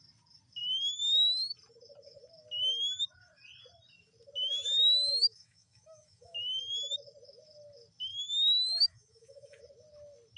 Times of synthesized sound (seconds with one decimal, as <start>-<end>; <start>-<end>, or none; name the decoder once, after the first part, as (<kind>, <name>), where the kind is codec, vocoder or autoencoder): 5.1-6.6 (autoencoder, DAC-VAE); 8.1-9.6